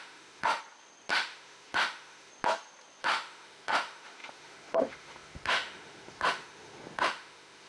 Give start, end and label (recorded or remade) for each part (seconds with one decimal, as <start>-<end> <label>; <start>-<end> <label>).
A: 0.0-0.6 remade; 0.6-1.1 recorded; 1.1-2.3 remade; 2.3-3.0 recorded; 3.0-7.7 remade